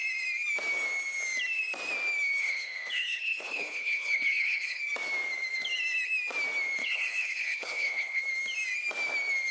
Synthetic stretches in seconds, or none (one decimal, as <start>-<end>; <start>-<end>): 2.4-4.8; 6.8-8.2